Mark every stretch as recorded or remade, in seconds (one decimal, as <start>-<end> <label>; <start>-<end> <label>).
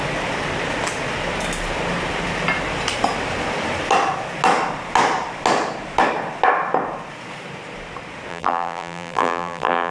0.0-8.3 recorded; 8.3-9.9 remade